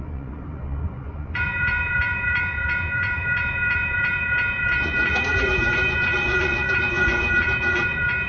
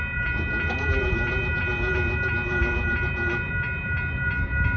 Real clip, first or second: second